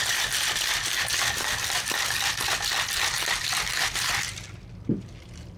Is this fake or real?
real